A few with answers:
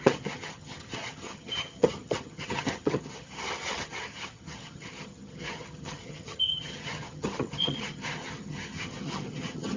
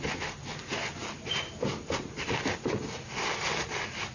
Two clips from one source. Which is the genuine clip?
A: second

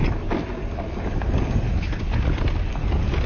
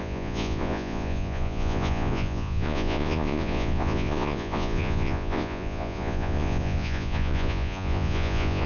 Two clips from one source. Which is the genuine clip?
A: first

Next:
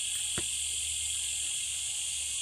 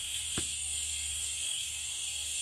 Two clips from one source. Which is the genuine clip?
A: first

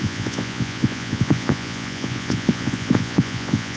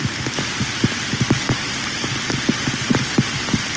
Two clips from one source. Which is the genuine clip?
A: second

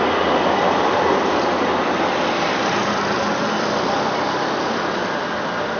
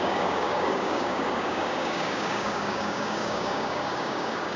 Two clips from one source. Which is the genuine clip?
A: first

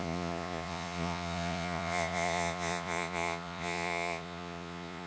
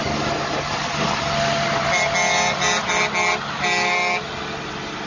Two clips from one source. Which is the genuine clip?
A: second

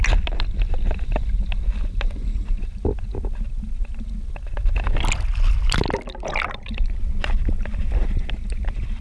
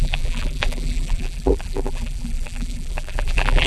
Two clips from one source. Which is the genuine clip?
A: first